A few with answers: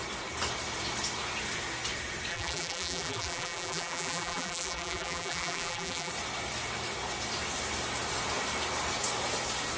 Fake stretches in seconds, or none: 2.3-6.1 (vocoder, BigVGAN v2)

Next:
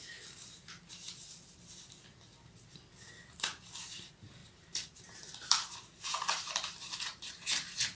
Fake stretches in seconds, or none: 4.4-7.3 (vocoder, BigVGAN v2)

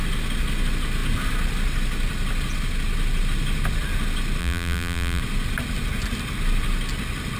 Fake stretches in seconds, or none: 4.4-5.2 (vocoder, BigVGAN v2)

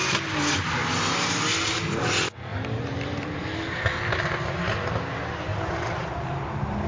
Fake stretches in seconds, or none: 2.5-3.4 (vocoder, BigVGAN v2); 5.5-6.4

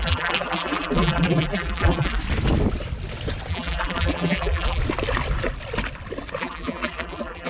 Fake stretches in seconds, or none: 0.0-2.2 (vocoder, BigVGAN v2); 3.5-4.8; 6.4-7.5

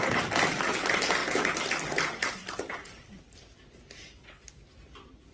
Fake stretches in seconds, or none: none

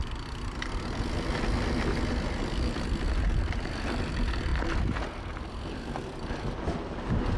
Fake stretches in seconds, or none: 4.5-5.5 (vocoder, BigVGAN v2)